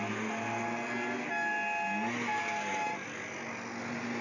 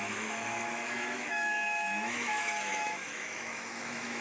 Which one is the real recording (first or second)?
first